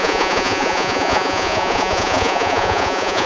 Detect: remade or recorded remade